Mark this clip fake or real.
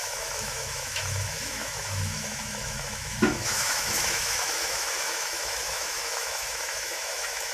fake